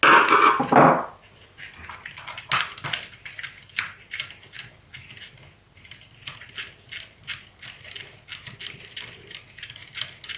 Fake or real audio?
real